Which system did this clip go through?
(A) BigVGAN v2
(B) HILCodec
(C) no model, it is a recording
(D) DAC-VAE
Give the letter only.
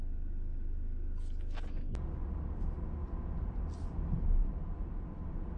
C